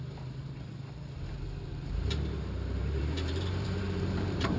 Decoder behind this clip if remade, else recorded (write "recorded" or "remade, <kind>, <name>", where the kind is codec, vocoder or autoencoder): remade, vocoder, BigVGAN v2